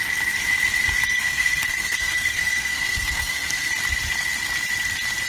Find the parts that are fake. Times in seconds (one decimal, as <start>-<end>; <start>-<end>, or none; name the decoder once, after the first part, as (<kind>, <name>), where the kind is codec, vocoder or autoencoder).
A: 1.0-3.7 (codec, SNAC)